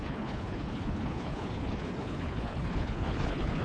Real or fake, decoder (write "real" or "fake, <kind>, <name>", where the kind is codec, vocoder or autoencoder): fake, codec, HILCodec